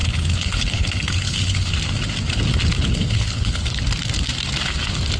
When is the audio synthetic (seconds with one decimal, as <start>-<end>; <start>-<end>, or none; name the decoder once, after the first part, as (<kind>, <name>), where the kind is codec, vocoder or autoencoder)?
0.0-1.7 (codec, HILCodec); 2.7-3.8